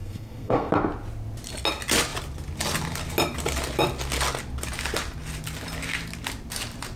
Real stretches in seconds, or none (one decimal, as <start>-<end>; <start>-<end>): 0.7-7.0